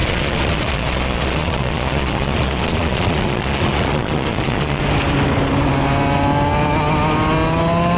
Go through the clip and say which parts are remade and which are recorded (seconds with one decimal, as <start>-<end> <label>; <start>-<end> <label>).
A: 0.0-4.8 remade; 4.8-8.0 recorded